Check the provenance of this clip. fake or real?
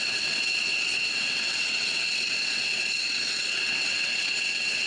fake